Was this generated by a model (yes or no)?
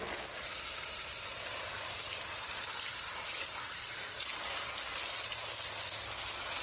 no